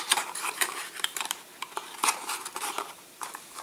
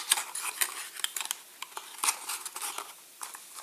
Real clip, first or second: second